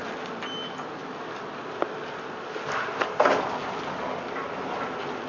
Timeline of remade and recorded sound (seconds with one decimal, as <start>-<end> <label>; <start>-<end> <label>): 0.0-5.3 recorded